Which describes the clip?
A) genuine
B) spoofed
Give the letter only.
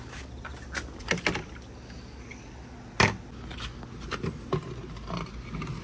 A